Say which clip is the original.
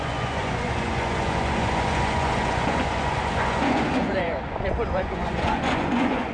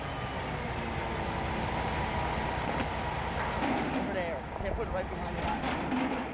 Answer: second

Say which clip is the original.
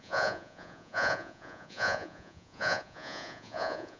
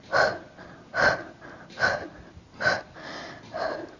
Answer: second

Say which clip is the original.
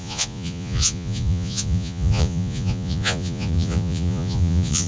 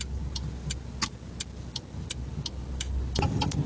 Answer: second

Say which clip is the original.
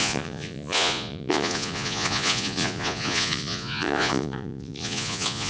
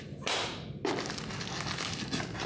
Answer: second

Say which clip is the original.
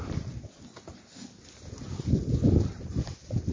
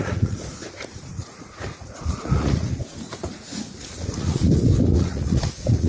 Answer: first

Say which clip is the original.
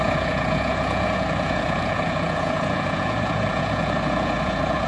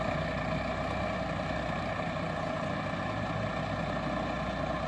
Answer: second